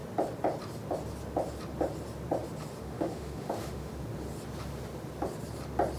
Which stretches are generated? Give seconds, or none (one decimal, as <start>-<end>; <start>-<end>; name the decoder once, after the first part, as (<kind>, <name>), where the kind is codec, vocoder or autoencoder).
2.8-3.9 (autoencoder, DAC-VAE)